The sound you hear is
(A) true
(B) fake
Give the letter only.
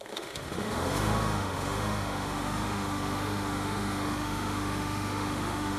B